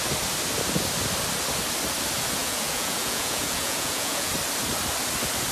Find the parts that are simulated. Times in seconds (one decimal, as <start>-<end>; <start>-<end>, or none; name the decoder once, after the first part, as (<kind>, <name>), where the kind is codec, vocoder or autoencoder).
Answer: 2.4-4.3 (vocoder, Vocos)

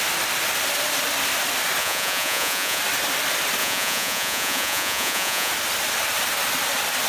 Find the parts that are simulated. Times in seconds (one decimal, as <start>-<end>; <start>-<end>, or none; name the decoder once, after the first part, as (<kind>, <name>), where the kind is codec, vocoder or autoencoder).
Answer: 1.8-2.8 (vocoder, Vocos); 3.6-5.5

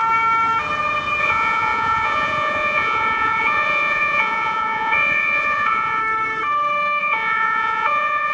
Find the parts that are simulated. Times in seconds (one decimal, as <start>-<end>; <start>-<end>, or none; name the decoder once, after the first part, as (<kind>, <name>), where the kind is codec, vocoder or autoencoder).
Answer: 1.2-6.0 (vocoder, Vocos); 7.0-8.3

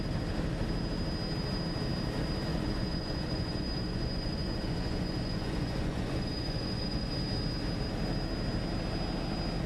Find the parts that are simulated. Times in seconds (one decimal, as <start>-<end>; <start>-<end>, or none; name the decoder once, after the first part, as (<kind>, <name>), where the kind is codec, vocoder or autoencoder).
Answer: 2.5-7.1 (vocoder, Vocos)

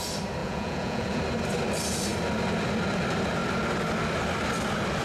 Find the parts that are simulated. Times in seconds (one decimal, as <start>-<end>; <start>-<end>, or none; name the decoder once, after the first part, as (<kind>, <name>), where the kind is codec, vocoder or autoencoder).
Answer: 0.4-1.2 (vocoder, Vocos)